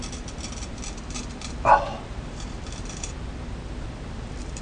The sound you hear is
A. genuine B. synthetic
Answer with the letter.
B